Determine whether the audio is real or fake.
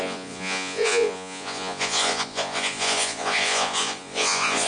fake